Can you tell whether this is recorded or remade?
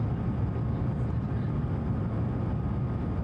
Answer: recorded